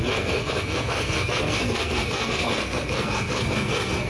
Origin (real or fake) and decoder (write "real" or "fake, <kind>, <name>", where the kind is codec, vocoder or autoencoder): fake, codec, SNAC